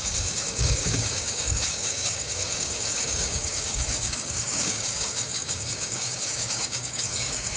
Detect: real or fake fake